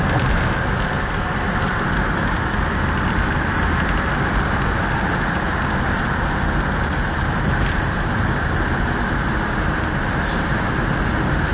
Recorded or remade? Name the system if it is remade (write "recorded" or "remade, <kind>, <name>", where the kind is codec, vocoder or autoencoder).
recorded